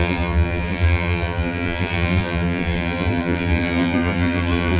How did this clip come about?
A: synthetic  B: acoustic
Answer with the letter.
A